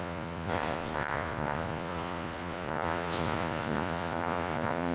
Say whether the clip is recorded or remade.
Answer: remade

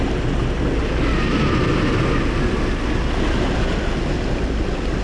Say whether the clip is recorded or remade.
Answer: recorded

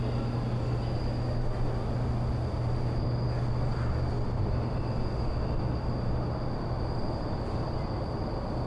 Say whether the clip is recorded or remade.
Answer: recorded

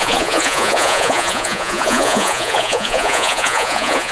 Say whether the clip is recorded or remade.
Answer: remade